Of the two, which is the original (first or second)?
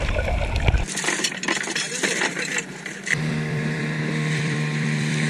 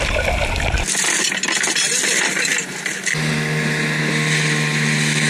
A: second